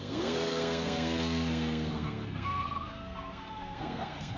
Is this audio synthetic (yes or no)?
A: yes